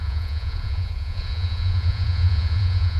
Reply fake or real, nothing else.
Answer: fake